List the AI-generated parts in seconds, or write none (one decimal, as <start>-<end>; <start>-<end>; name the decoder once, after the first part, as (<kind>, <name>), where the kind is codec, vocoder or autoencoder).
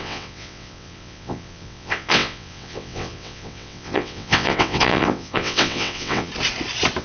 0.0-6.3 (vocoder, WaveNeXt)